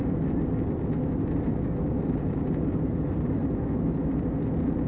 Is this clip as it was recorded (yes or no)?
yes